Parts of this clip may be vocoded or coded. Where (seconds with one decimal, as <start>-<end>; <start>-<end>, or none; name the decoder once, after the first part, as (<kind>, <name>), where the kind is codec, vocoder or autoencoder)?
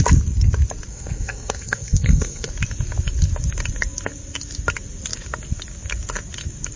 0.9-2.5 (codec, SNAC)